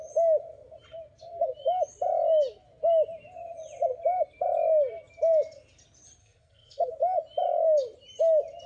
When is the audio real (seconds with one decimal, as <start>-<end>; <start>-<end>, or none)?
0.0-6.2; 6.9-8.7

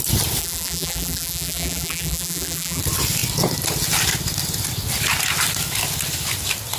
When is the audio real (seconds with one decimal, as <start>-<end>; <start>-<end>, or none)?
0.0-0.4; 2.8-6.8

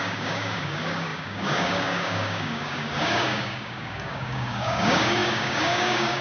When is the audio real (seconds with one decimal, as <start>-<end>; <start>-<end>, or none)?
none

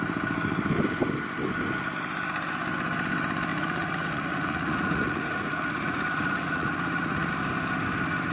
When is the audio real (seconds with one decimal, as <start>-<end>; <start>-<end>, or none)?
0.0-3.5; 7.3-8.3

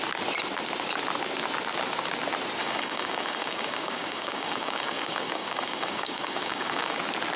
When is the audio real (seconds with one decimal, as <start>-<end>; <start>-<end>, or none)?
0.0-2.6; 7.0-7.4

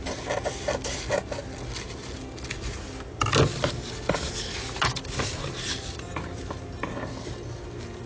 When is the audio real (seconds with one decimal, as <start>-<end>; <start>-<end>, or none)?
0.0-8.1